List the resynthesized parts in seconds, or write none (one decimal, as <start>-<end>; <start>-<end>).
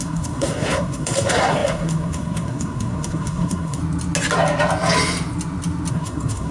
0.0-3.8; 5.9-6.5